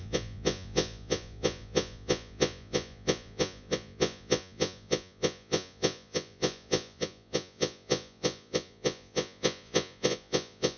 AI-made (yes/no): yes